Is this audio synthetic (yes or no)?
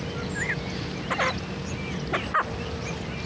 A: no